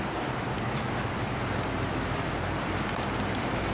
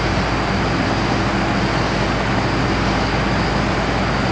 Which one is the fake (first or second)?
first